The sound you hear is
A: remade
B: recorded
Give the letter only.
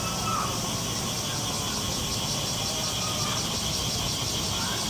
B